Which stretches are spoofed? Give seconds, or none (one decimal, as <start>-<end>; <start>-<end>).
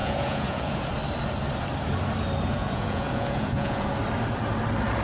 0.0-0.9; 2.6-3.9